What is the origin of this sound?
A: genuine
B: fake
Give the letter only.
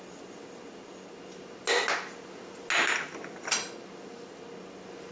A